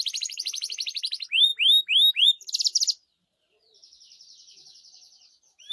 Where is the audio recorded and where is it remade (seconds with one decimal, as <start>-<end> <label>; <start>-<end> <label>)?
0.0-1.5 remade; 1.5-2.1 recorded; 2.1-5.7 remade